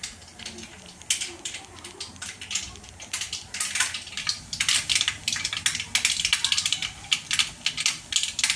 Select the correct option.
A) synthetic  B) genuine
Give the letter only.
B